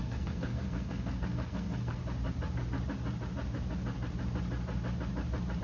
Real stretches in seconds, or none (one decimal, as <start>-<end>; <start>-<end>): 2.0-5.6